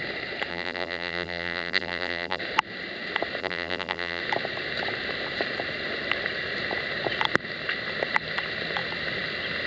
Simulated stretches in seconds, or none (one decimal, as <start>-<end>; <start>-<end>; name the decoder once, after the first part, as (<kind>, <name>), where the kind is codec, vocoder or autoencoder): 0.5-2.4 (vocoder, BigVGAN v2); 3.4-4.2

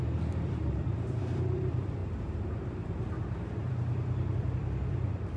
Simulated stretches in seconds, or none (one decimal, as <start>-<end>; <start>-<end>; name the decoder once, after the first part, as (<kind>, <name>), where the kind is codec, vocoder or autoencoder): 0.0-5.4 (vocoder, BigVGAN v2)

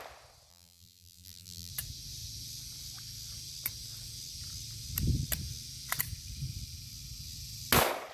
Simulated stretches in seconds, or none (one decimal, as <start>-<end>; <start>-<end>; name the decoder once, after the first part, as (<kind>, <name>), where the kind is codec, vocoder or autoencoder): 0.5-1.7 (vocoder, BigVGAN v2)

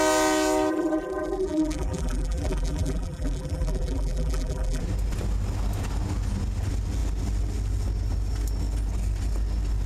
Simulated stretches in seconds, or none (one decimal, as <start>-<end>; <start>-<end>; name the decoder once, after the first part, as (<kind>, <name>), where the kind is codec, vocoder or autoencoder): 0.7-4.8 (vocoder, BigVGAN v2)

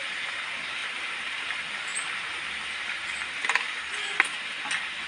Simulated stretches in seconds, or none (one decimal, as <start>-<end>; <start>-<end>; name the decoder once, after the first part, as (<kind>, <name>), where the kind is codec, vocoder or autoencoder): 0.8-1.4 (vocoder, BigVGAN v2)

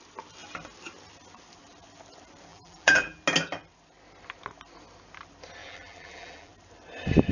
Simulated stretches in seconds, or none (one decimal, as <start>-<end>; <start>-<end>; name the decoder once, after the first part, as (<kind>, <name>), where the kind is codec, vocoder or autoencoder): 2.5-3.2 (vocoder, BigVGAN v2); 5.6-6.5